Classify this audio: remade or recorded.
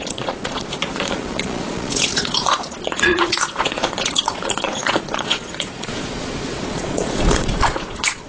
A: remade